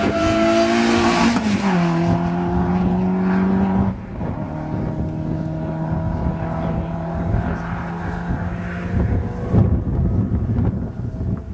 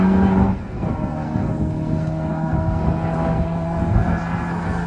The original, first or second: first